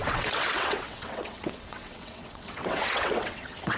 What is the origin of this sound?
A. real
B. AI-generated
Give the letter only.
B